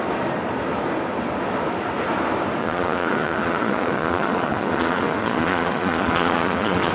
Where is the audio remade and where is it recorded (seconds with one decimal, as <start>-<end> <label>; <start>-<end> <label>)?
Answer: 0.0-2.6 recorded; 2.6-6.9 remade